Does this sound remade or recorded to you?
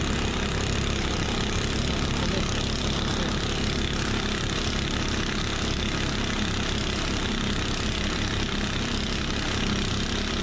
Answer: recorded